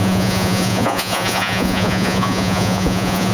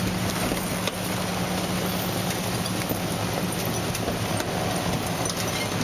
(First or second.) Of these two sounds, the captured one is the second